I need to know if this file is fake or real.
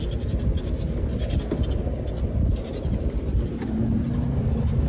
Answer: real